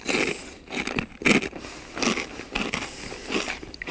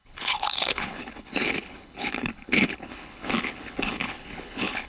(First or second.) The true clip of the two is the first